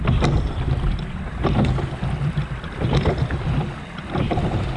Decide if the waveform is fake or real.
fake